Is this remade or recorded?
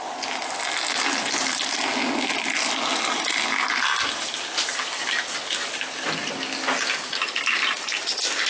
recorded